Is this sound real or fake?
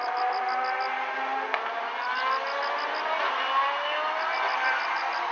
real